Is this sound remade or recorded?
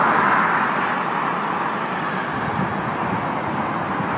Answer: recorded